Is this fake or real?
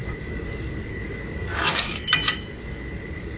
fake